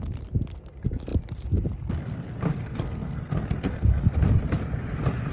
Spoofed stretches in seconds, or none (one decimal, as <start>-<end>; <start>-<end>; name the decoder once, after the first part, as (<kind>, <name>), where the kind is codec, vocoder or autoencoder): 2.5-4.0 (codec, SNAC)